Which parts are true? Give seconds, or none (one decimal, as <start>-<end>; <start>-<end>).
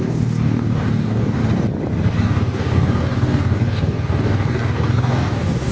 1.4-2.1